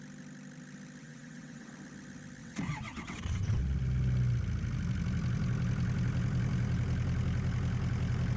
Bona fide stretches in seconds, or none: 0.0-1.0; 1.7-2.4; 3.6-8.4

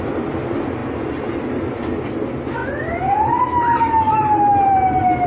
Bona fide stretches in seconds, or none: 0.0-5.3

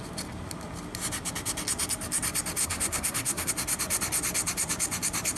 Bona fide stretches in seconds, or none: 0.0-2.6; 3.5-5.4

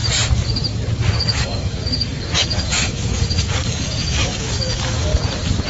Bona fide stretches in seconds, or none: 0.0-1.0; 5.1-5.7

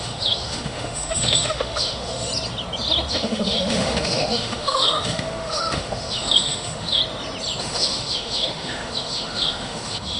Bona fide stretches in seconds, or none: 2.3-3.1; 7.0-7.6

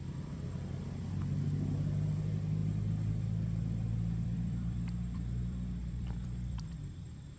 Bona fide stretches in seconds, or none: 2.6-3.1

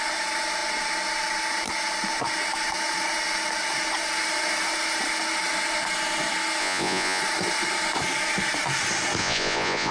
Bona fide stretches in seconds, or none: 0.0-6.6; 7.2-9.2

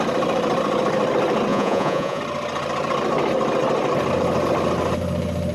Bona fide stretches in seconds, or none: 0.0-1.5; 2.2-5.5